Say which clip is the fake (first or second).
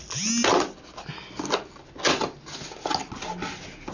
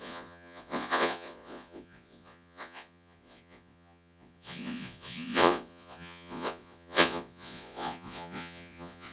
second